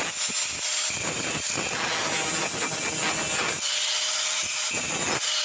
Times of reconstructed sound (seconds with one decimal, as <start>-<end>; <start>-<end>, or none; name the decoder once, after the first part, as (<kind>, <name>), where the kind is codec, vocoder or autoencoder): 0.8-1.5 (vocoder, BigVGAN v2); 4.4-4.9